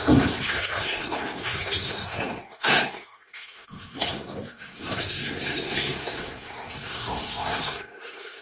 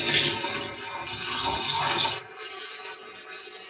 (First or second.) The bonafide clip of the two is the second